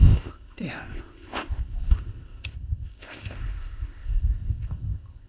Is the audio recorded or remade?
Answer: remade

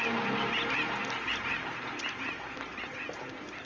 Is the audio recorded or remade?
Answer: recorded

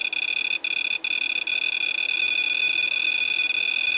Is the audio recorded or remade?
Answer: recorded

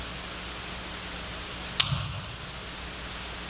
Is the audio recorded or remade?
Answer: recorded